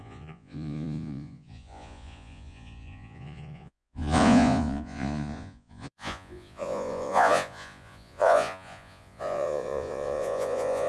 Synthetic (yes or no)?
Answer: yes